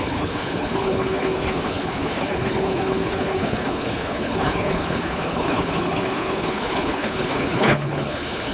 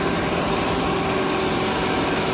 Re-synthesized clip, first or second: first